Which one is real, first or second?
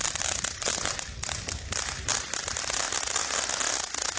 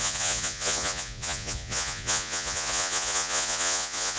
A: first